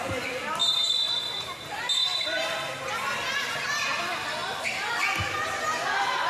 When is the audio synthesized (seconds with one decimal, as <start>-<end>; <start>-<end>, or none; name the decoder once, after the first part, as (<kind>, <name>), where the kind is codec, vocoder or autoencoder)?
0.6-1.5 (vocoder, BigVGAN v2); 2.1-3.7; 4.4-4.9